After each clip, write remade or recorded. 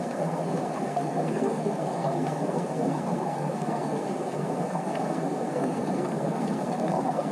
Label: remade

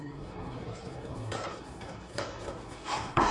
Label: remade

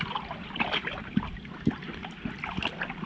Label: recorded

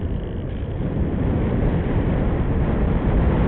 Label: recorded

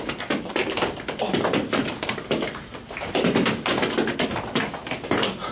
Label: recorded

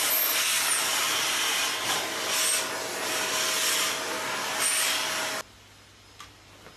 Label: recorded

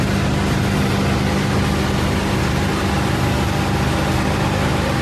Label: recorded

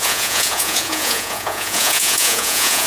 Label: remade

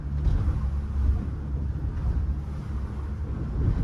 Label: recorded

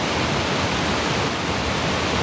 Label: recorded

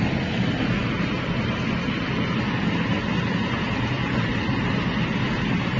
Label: recorded